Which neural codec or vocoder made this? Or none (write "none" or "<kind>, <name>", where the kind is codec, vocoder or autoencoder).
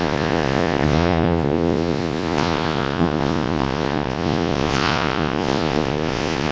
vocoder, Vocos